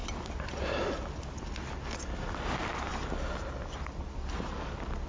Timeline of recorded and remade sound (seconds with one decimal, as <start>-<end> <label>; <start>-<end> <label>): 0.0-5.1 recorded